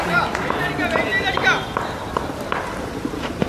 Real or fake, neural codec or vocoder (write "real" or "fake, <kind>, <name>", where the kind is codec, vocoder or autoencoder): real